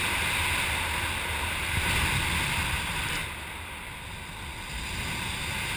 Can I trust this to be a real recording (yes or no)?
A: yes